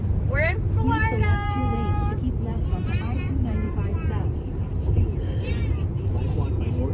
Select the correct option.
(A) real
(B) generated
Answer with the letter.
B